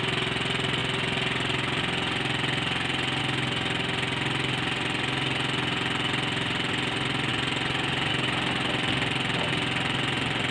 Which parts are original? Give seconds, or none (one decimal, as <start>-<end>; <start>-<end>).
0.0-10.5